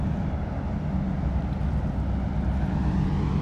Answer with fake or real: real